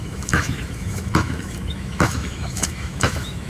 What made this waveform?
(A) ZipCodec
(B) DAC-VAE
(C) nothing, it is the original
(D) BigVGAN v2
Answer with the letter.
B